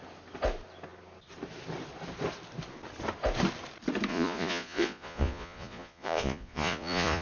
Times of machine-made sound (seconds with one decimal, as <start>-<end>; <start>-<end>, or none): 4.1-7.2